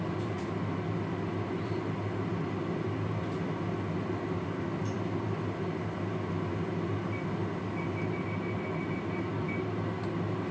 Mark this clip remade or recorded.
recorded